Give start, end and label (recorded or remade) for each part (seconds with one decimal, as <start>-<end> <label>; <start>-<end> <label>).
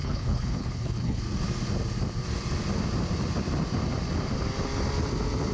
0.0-1.2 remade; 1.2-5.5 recorded